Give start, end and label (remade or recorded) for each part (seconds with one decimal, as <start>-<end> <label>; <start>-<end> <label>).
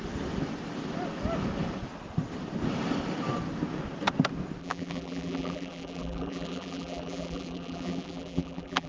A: 0.0-4.6 recorded; 4.6-8.9 remade